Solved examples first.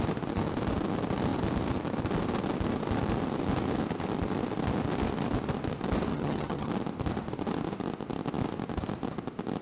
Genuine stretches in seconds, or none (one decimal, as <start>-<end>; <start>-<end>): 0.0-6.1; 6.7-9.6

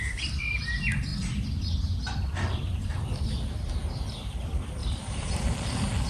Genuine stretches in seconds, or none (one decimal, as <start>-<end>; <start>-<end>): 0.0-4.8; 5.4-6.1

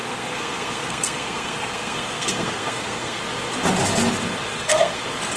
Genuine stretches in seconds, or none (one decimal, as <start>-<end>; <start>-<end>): 3.2-4.5; 5.0-5.4

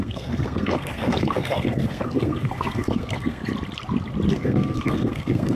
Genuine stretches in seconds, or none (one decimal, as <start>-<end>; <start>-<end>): 3.4-4.3

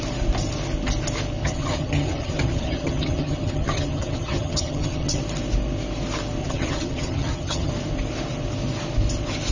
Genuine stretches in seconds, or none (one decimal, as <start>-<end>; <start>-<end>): 0.0-1.4; 5.2-6.4; 7.7-9.5